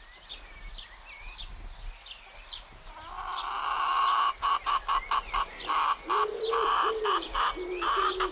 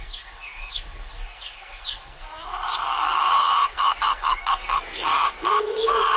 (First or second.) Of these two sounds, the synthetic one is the second